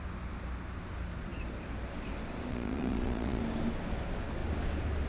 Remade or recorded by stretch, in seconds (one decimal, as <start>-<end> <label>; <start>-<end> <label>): 0.0-2.5 recorded; 2.5-3.4 remade; 3.4-5.1 recorded